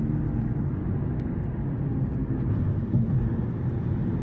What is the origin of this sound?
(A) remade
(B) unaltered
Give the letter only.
B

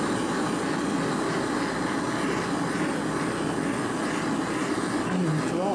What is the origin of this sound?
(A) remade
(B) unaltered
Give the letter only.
B